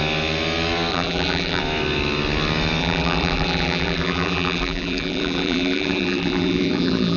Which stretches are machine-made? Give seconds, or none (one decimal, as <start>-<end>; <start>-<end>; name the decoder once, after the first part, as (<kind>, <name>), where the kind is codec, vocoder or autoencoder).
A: 0.9-1.6 (vocoder, BigVGAN v2); 2.8-7.2